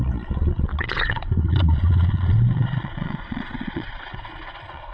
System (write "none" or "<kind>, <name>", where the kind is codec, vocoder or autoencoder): vocoder, Vocos